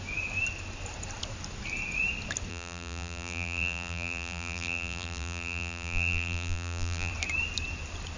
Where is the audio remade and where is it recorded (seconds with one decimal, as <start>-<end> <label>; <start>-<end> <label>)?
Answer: 0.0-2.5 recorded; 2.5-7.1 remade; 7.1-8.2 recorded